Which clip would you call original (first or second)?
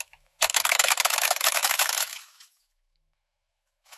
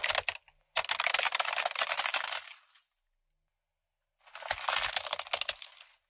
second